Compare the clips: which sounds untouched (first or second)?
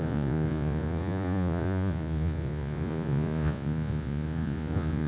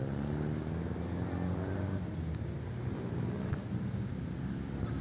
second